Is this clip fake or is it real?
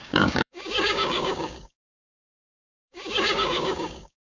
fake